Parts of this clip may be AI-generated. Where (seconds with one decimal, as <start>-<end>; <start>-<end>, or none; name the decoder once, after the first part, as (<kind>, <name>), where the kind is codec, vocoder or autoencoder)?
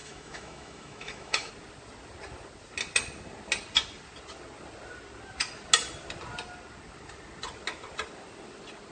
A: 0.0-1.5 (autoencoder, DAC-VAE)